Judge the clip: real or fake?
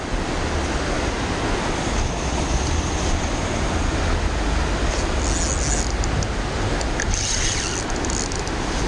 real